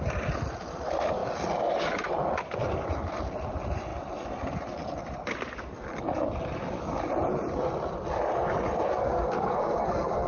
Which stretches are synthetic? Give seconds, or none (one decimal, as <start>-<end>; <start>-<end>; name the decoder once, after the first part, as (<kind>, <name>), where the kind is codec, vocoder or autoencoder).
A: 8.9-10.3 (codec, SNAC)